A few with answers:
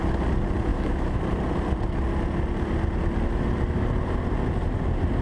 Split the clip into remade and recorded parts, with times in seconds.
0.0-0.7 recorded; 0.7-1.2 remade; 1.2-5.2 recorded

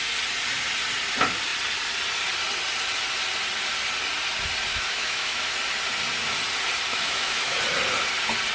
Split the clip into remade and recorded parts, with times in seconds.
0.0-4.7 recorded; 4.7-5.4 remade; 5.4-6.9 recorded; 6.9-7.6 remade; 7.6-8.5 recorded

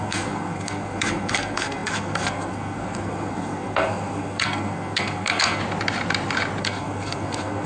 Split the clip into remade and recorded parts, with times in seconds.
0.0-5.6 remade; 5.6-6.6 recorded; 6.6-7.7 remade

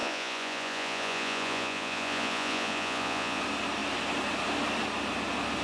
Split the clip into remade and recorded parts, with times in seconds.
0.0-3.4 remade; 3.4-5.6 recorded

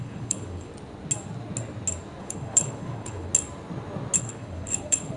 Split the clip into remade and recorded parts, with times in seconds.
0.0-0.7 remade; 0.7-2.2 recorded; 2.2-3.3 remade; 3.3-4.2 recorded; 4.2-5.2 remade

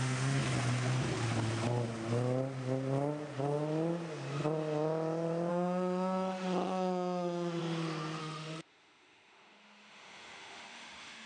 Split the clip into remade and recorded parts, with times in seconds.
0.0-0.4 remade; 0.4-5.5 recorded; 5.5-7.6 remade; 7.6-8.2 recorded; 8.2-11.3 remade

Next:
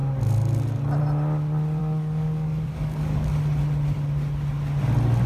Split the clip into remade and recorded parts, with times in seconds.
0.0-1.8 recorded; 1.8-3.3 remade; 3.3-5.3 recorded

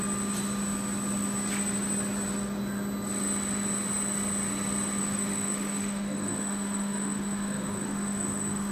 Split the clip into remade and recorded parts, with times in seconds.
0.0-5.0 recorded; 5.0-8.7 remade